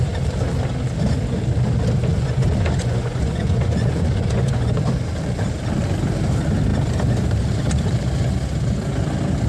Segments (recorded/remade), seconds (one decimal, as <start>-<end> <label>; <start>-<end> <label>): 0.0-2.1 recorded; 2.1-4.9 remade; 4.9-9.5 recorded